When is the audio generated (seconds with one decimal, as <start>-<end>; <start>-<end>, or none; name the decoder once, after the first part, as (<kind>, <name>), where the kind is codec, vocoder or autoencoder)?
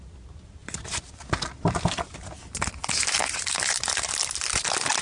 none